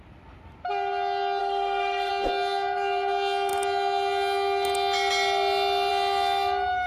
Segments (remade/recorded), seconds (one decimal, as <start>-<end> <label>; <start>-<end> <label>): 0.0-1.4 recorded; 1.4-2.1 remade; 2.1-6.9 recorded